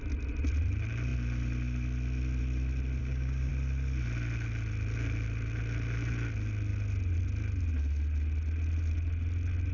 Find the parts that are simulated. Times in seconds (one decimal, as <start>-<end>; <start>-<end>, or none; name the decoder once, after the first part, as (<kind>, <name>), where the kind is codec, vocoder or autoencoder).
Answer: 3.0-3.5 (codec, DAC)